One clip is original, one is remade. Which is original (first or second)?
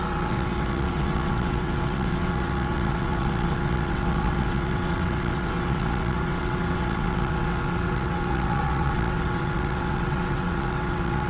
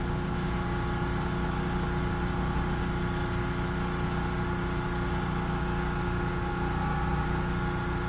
second